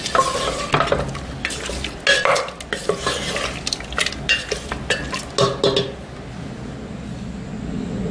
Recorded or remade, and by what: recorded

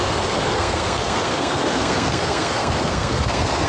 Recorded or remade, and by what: remade, codec, SNAC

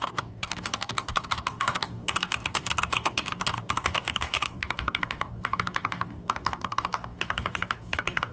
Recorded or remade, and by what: remade, codec, DAC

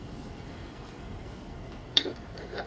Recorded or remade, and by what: remade, codec, SNAC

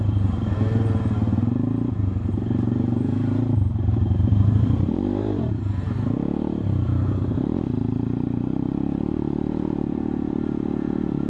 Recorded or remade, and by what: remade, vocoder, BigVGAN v2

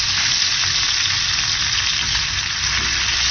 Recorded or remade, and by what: recorded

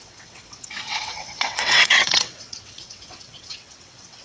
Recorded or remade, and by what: remade, vocoder, WaveNeXt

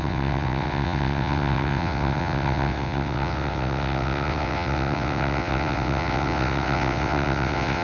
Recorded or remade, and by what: remade, vocoder, WaveNeXt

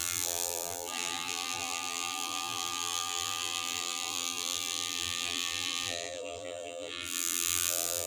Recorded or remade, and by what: remade, vocoder, BigVGAN v2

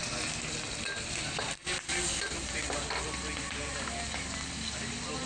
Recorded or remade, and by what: recorded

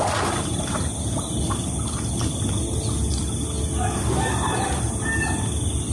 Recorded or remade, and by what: recorded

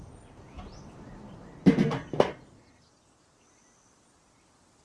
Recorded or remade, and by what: recorded